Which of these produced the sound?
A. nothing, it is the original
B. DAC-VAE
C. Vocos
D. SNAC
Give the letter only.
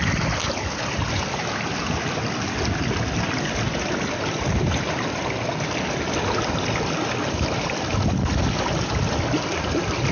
A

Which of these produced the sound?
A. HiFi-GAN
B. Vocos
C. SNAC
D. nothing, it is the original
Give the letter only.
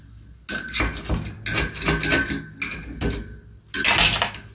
D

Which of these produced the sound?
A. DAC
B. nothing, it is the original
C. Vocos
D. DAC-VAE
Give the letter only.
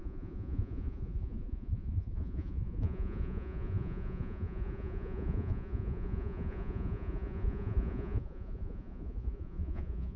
C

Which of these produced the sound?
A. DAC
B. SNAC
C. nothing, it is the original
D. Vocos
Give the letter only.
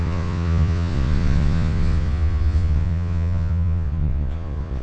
D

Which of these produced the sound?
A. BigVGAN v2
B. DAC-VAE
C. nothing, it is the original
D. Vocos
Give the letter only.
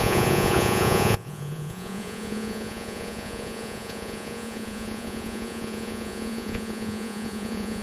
D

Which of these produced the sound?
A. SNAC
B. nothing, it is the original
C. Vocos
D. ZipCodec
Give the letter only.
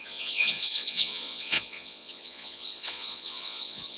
C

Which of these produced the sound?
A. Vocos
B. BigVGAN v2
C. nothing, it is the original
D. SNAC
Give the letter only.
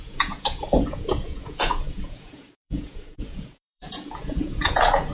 A